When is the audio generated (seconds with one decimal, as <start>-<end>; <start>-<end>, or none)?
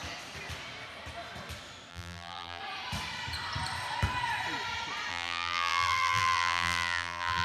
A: 1.9-2.6; 5.1-7.4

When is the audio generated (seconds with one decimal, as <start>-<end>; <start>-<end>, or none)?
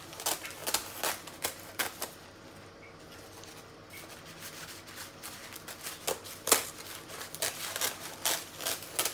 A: none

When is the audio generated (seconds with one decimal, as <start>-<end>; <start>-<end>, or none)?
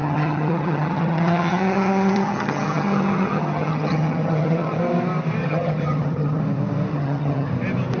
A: 0.0-4.8; 5.4-6.4; 6.9-7.5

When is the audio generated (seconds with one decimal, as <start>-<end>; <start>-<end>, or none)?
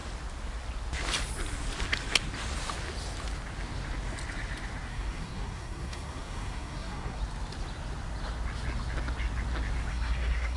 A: 4.9-7.2; 9.9-10.6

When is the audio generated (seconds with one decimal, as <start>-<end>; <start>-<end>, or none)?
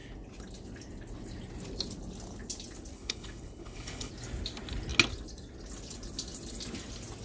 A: 2.9-4.1